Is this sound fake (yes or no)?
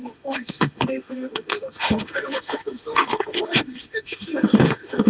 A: yes